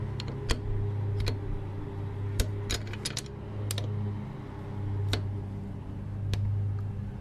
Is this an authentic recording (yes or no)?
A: yes